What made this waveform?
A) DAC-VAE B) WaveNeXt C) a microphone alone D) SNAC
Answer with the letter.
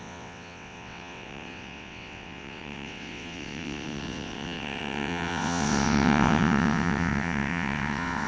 B